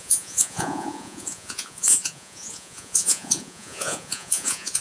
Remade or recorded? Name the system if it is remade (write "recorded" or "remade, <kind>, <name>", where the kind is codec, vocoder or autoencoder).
remade, vocoder, Vocos